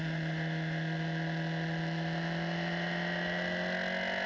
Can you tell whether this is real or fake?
real